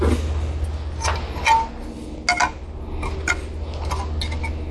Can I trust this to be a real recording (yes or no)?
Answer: yes